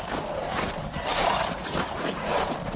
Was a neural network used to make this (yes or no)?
no